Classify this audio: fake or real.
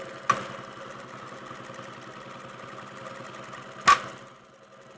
real